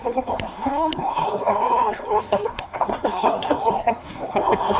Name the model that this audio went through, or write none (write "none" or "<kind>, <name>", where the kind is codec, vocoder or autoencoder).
codec, SNAC